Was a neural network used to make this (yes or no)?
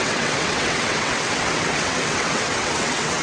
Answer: yes